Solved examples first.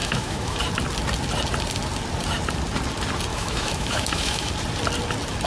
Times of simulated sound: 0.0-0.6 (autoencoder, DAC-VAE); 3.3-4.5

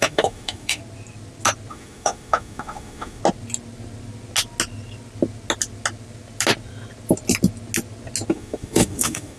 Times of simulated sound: 0.0-0.8 (autoencoder, DAC-VAE); 1.7-3.2; 8.3-9.4

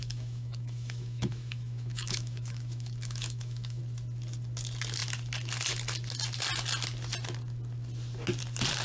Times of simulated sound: 0.0-3.8 (autoencoder, DAC-VAE)